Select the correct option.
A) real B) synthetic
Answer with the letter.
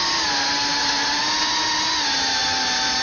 A